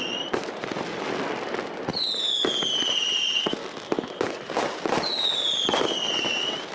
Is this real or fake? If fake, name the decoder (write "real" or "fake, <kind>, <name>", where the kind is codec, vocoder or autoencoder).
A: real